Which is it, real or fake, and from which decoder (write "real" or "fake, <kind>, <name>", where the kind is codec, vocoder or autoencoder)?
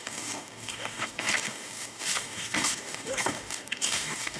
fake, codec, DAC